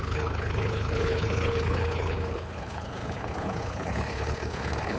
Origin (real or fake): fake